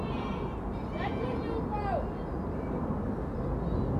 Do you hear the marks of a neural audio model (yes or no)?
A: no